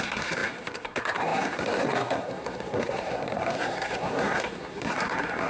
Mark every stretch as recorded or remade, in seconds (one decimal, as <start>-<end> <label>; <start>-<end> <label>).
0.0-5.5 remade

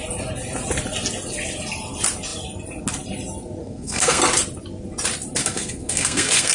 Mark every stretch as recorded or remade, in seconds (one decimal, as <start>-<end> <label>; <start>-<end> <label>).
0.0-3.6 recorded; 3.6-4.2 remade; 4.2-5.4 recorded; 5.4-6.5 remade

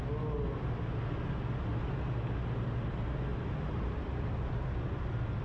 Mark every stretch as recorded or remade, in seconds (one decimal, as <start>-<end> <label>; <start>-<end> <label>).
0.0-5.4 recorded

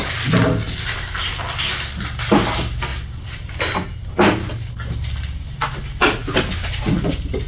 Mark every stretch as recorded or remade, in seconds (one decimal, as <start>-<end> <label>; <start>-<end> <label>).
0.0-2.9 recorded; 2.9-4.7 remade; 4.7-7.5 recorded

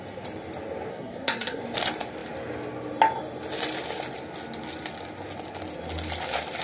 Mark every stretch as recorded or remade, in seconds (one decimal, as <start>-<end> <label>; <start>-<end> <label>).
0.0-0.9 recorded; 0.9-1.6 remade; 1.6-6.6 recorded

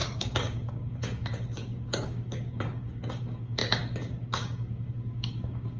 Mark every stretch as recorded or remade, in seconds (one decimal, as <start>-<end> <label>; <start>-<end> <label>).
0.0-5.8 remade

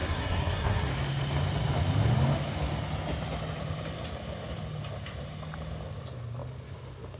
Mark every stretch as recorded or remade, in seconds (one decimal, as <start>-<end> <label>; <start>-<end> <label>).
0.0-0.9 remade; 0.9-7.2 recorded